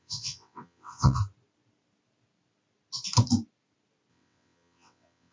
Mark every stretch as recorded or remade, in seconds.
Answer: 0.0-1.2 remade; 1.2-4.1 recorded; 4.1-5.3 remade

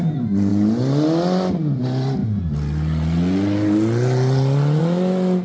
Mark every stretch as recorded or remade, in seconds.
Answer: 0.0-5.4 recorded

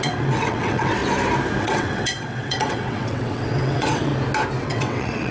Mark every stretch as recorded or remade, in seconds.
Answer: 0.0-1.0 remade; 1.0-1.6 recorded; 1.6-4.1 remade; 4.1-4.6 recorded; 4.6-5.3 remade

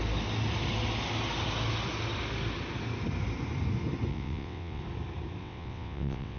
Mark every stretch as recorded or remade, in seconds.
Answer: 0.0-4.1 recorded; 4.1-4.8 remade; 4.8-5.4 recorded; 5.4-6.4 remade

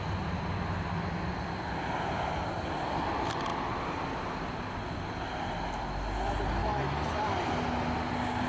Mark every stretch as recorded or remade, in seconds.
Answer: 0.0-8.5 recorded

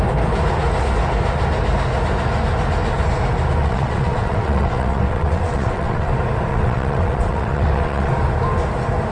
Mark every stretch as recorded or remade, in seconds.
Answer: 0.0-3.6 recorded; 3.6-6.1 remade; 6.1-6.5 recorded; 6.5-8.1 remade; 8.1-9.1 recorded